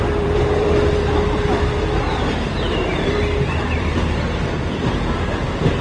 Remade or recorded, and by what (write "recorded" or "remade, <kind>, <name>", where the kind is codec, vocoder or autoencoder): remade, vocoder, BigVGAN v2